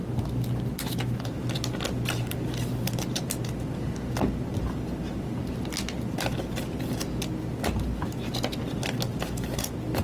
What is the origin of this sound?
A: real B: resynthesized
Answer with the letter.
A